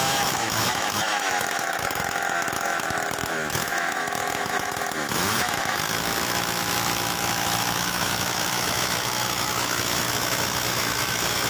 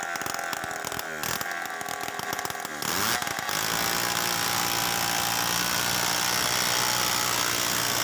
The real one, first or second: second